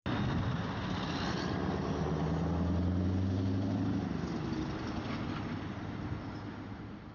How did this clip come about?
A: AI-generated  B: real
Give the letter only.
B